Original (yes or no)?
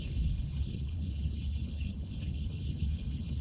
no